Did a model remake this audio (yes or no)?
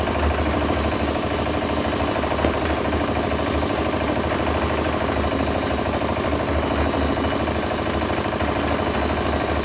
no